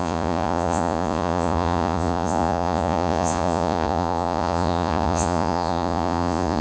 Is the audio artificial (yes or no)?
yes